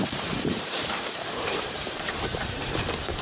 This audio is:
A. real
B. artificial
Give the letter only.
B